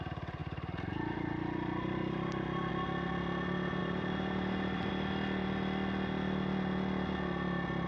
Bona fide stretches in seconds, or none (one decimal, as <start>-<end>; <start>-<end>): 0.0-0.4; 2.7-3.8; 4.9-7.9